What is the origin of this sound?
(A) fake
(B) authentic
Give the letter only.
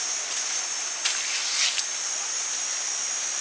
B